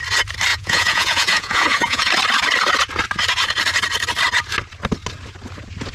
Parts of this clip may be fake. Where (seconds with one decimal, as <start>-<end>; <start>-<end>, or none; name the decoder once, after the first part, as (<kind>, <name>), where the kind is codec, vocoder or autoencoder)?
0.5-2.1 (vocoder, Vocos)